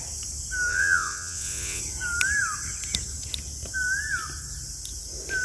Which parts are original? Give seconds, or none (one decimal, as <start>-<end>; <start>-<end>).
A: 0.0-0.7; 1.8-5.4